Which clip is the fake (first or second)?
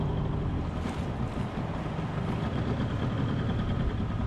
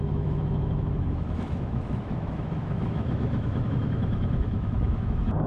second